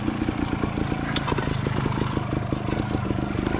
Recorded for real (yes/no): yes